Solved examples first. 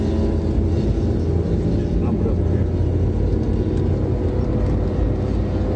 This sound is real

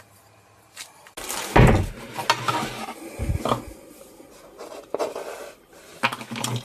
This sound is real